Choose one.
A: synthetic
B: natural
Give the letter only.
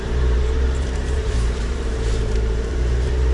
A